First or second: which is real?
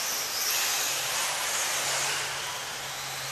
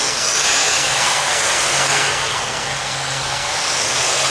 first